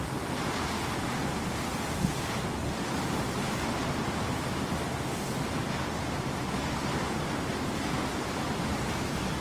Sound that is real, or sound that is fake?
real